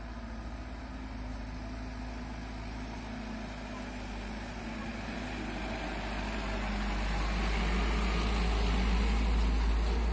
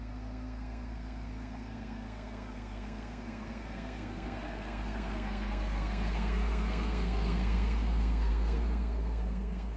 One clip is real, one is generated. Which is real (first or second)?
first